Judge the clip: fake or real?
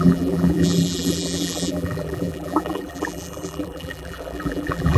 fake